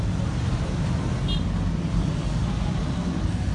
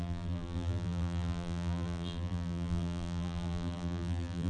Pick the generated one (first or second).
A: second